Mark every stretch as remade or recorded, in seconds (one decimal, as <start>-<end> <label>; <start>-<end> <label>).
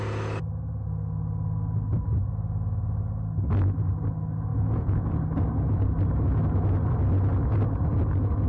0.0-4.5 recorded; 4.5-5.2 remade; 5.2-8.5 recorded